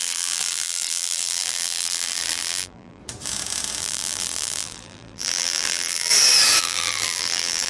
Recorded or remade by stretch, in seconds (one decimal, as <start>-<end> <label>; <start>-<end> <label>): 0.0-3.0 remade; 3.0-3.8 recorded; 3.8-6.1 remade; 6.1-6.6 recorded; 6.6-7.7 remade